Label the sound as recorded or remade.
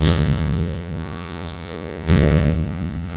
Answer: remade